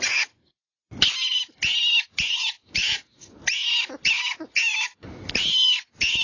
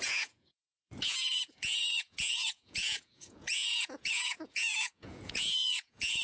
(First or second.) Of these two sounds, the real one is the first